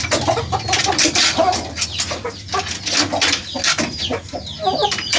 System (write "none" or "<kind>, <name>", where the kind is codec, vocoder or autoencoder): none